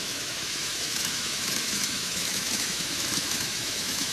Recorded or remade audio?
remade